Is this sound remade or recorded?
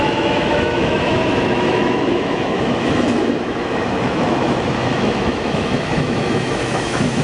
remade